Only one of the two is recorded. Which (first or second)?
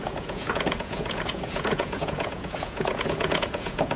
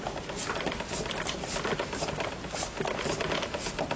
second